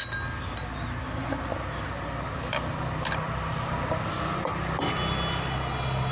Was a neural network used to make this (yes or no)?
no